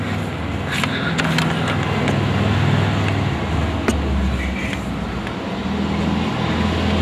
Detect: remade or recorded recorded